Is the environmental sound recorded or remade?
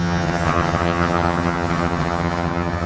remade